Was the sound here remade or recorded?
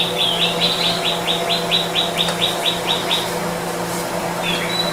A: recorded